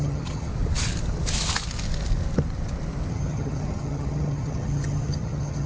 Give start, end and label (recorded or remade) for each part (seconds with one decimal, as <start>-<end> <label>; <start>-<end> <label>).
0.0-0.5 remade; 0.5-3.1 recorded; 3.1-5.7 remade